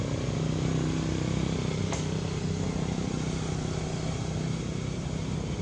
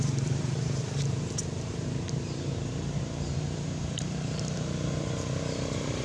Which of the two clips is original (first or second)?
first